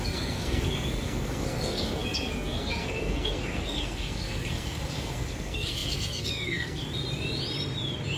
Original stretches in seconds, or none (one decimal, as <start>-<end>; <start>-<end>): 6.8-8.2